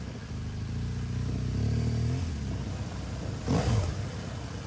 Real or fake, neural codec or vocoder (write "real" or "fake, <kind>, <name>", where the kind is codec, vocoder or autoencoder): real